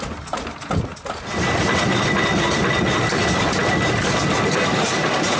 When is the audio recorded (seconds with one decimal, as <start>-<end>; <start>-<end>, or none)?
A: 0.0-5.4